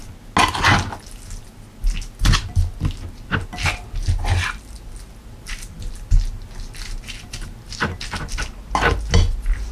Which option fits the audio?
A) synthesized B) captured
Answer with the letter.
B